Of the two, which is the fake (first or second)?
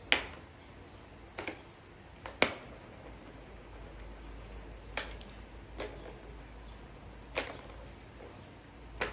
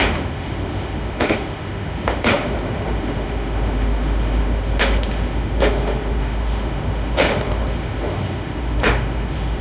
second